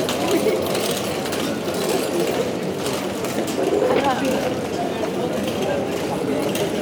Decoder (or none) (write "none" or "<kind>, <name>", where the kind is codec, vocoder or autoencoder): none